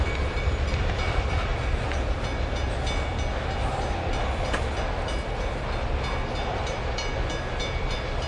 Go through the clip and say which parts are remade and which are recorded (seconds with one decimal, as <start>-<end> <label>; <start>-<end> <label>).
0.0-1.5 remade; 1.5-6.5 recorded; 6.5-7.1 remade; 7.1-7.6 recorded; 7.6-8.3 remade